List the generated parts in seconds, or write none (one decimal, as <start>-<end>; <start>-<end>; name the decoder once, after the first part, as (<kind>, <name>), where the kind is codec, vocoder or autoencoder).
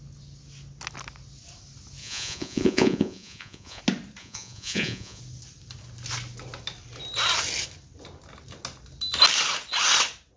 2.0-3.8 (vocoder, Vocos); 4.2-5.2